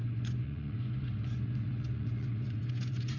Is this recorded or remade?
remade